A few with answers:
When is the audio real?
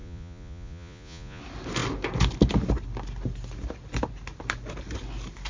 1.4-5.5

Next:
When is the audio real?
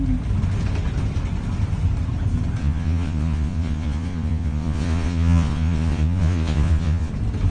0.0-2.6; 7.1-7.5